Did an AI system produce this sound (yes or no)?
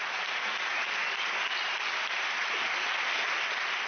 no